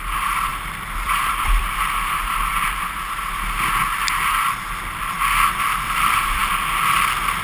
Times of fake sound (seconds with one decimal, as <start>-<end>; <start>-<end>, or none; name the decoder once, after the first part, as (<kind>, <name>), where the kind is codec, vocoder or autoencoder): 0.0-2.5 (vocoder, BigVGAN v2); 5.8-6.4